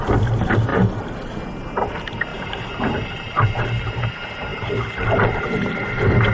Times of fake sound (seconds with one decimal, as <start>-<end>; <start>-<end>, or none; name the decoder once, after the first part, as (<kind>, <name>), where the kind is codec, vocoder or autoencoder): 2.3-4.1 (vocoder, BigVGAN v2); 4.5-5.4